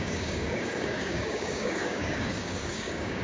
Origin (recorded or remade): remade